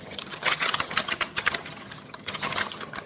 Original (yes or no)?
no